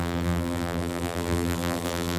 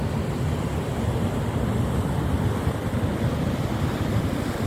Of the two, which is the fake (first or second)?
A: first